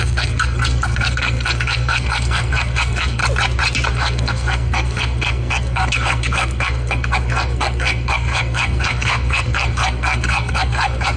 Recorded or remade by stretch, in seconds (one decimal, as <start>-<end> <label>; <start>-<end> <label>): 0.0-3.2 remade; 3.2-3.9 recorded; 3.9-11.2 remade